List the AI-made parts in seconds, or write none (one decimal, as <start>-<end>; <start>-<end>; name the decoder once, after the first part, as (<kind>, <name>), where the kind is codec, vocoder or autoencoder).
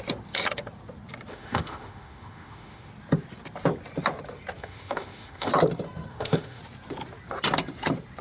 1.3-2.9 (autoencoder, DAC-VAE); 4.6-5.5; 6.1-6.6